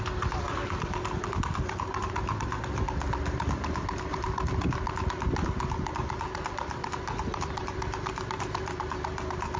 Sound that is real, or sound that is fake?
real